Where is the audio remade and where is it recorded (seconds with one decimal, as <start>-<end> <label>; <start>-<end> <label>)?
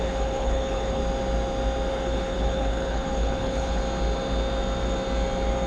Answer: 0.0-1.0 remade; 1.0-1.9 recorded; 1.9-3.8 remade; 3.8-5.7 recorded